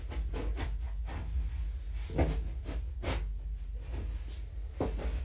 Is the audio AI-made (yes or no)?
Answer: no